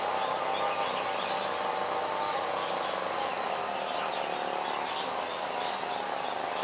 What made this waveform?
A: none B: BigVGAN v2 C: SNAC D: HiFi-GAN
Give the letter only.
A